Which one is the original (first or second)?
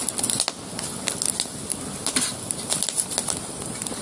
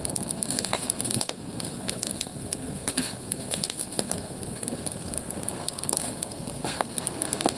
first